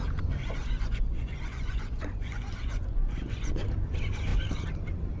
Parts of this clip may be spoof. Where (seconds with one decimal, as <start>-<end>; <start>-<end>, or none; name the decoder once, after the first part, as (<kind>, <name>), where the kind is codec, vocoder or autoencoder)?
0.4-3.5 (vocoder, Vocos)